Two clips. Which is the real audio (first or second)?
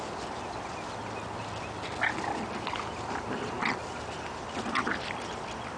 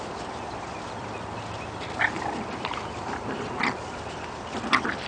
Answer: first